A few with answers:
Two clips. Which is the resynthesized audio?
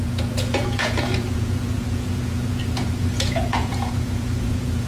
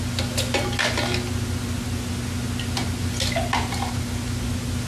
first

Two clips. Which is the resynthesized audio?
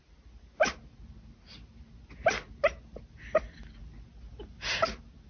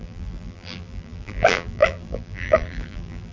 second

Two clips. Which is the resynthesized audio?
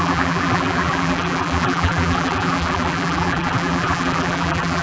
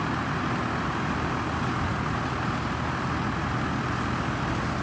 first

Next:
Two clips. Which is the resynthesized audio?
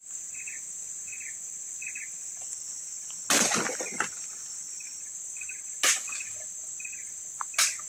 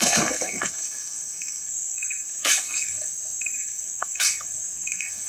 second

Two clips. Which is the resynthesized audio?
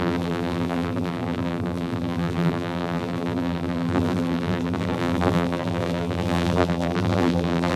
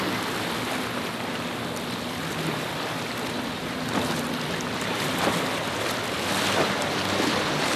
first